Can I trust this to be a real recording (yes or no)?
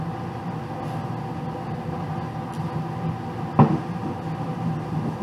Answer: yes